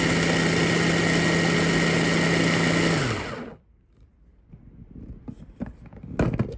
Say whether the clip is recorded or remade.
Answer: recorded